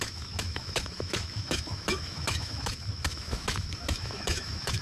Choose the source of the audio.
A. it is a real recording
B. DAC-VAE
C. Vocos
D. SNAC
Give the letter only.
B